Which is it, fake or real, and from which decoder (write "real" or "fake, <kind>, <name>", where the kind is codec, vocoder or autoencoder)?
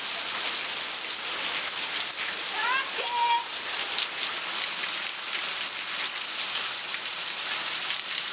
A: real